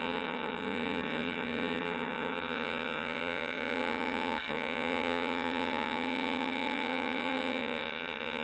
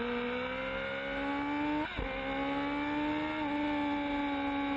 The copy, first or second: first